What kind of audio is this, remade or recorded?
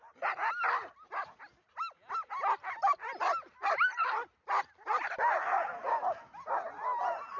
recorded